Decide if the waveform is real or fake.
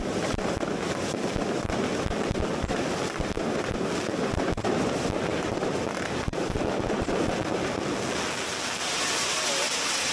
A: real